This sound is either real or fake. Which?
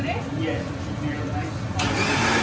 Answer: real